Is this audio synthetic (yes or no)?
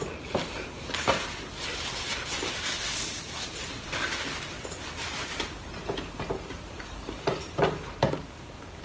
no